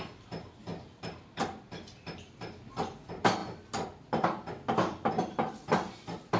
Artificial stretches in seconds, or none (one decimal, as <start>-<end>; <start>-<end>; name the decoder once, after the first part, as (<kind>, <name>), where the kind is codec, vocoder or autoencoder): none